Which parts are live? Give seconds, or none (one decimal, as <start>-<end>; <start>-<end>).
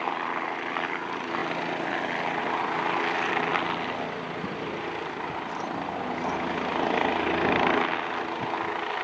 0.0-9.0